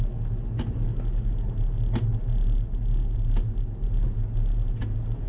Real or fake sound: real